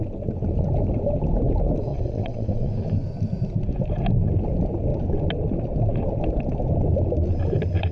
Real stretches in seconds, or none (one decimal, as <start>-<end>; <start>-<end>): 0.0-1.9; 2.7-7.9